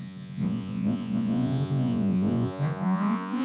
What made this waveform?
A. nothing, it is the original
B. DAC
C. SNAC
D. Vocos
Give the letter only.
D